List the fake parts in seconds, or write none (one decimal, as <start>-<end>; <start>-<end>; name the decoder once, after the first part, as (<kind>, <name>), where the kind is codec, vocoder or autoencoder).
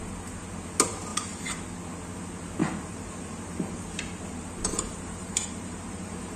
1.1-1.7 (vocoder, BigVGAN v2); 2.6-6.4